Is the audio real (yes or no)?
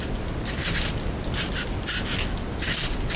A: yes